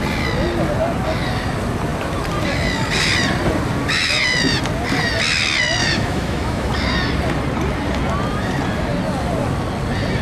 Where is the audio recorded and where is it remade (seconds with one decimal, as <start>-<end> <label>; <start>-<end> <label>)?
0.0-5.8 recorded; 5.8-6.7 remade; 6.7-10.2 recorded